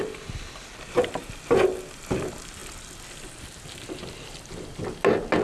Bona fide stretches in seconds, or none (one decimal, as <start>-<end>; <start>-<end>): 0.0-5.4